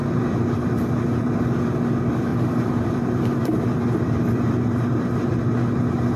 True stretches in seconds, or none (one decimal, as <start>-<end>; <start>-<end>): 0.5-2.3; 5.3-6.2